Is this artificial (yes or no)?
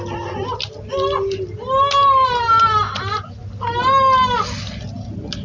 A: no